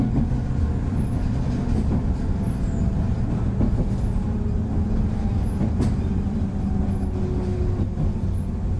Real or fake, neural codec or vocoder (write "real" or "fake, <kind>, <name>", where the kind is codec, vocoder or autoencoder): real